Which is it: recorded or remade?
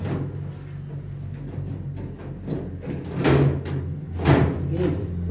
recorded